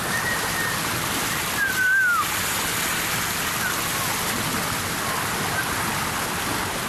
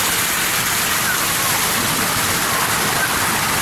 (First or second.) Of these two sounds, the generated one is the second